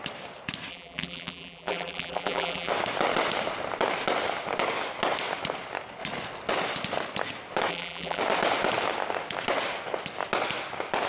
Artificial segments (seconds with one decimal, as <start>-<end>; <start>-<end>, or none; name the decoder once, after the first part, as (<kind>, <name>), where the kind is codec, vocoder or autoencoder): 0.7-2.7 (vocoder, BigVGAN v2); 7.7-8.2